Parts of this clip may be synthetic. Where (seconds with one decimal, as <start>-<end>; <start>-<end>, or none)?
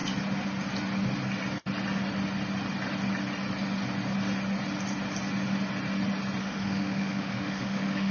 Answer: 6.4-8.1